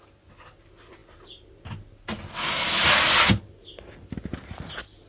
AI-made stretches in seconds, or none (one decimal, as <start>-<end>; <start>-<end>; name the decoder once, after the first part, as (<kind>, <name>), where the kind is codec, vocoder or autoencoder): none